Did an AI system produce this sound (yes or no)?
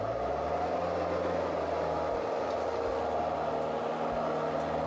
no